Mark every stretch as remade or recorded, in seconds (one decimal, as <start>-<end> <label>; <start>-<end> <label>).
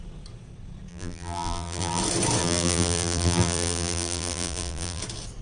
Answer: 0.0-0.9 recorded; 0.9-2.0 remade; 2.0-2.4 recorded; 2.4-5.0 remade; 5.0-5.4 recorded